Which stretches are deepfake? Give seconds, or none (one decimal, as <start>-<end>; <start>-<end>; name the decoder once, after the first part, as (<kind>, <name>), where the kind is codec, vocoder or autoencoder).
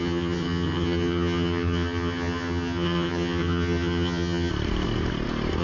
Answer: 0.0-4.5 (vocoder, HiFi-GAN)